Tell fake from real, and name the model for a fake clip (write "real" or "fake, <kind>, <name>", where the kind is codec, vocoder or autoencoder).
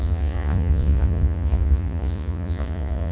fake, vocoder, Vocos